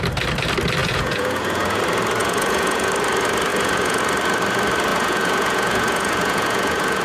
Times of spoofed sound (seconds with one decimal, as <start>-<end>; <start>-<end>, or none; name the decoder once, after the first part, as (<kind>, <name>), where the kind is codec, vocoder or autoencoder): 0.8-1.8 (vocoder, Vocos); 2.2-2.9; 3.5-4.0; 4.9-7.0